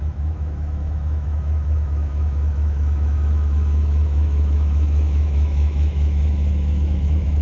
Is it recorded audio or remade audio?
remade